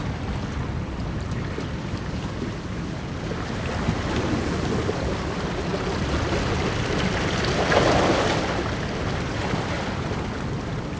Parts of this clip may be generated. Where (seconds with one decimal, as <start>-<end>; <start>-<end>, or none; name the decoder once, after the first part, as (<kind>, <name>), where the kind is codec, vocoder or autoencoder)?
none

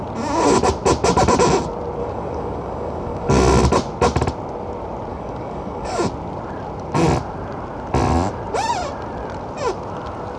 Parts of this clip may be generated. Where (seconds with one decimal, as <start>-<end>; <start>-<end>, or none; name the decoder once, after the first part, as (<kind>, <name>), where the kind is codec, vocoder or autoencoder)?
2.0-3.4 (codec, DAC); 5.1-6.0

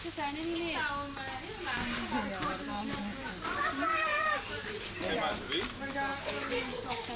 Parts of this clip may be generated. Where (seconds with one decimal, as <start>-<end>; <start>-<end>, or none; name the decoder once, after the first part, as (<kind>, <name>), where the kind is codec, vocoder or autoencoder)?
2.7-3.3 (codec, DAC); 4.1-4.8; 6.1-7.2

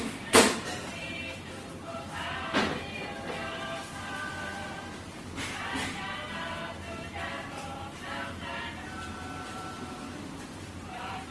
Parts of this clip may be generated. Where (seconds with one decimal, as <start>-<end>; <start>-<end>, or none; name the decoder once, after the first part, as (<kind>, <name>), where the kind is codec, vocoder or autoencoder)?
0.0-4.5 (vocoder, BigVGAN v2); 7.0-8.5; 9.5-11.3